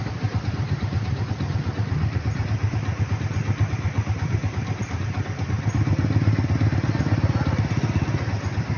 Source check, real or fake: real